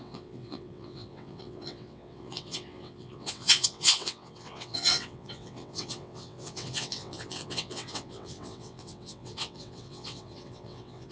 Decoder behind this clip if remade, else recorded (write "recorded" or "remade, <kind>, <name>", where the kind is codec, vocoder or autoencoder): remade, vocoder, WaveNeXt